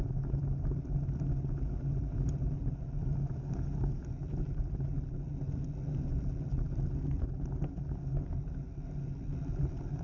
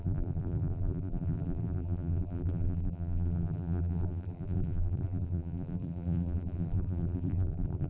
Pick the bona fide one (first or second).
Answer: first